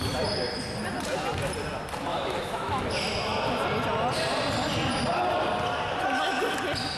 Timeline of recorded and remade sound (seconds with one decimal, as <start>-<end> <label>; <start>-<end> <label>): 0.0-2.1 recorded; 2.1-2.9 remade; 2.9-7.0 recorded